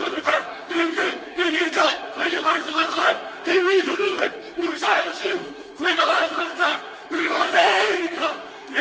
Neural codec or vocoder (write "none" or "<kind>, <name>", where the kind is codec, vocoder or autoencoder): codec, SNAC